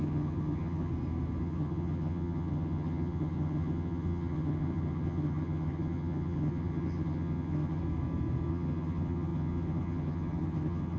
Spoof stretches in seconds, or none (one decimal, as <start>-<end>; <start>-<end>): 0.0-0.9; 1.4-7.8; 8.5-11.0